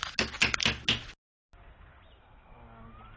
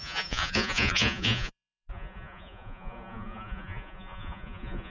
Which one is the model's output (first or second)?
second